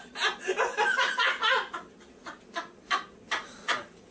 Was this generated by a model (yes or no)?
no